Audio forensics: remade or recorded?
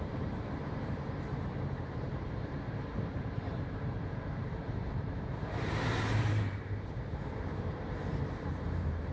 remade